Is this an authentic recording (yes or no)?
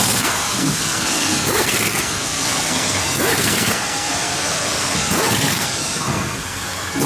no